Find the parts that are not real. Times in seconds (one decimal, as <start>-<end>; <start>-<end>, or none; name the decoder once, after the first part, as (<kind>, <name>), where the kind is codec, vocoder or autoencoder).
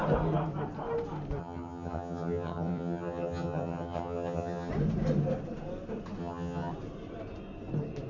1.4-4.7 (vocoder, HiFi-GAN); 6.2-6.7